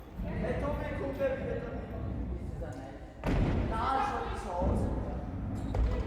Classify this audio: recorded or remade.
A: recorded